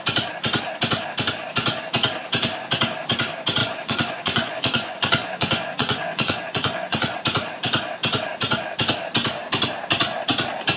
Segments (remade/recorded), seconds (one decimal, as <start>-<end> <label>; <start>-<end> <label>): 0.0-3.6 recorded; 3.6-7.2 remade; 7.2-10.8 recorded